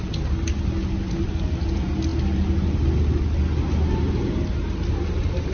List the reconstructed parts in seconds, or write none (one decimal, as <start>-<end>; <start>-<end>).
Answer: none